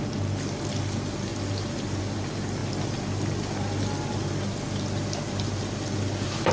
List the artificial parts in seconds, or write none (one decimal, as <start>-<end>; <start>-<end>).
none